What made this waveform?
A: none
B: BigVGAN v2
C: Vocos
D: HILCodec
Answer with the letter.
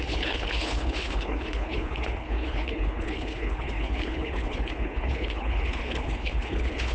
D